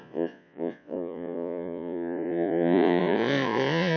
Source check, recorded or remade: remade